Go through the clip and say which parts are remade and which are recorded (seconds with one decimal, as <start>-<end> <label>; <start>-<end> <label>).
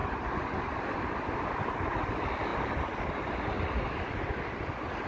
0.0-5.1 recorded